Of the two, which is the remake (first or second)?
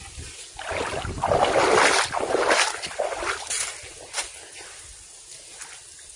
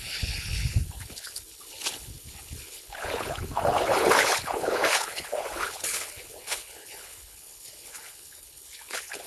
second